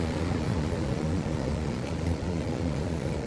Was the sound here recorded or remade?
remade